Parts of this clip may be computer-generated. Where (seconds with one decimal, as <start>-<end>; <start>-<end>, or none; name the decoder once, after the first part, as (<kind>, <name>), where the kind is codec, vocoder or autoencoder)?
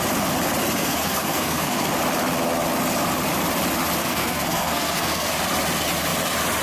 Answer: 0.8-1.9 (codec, SNAC); 4.0-5.3